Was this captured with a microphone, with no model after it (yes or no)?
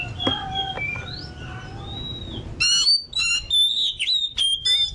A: yes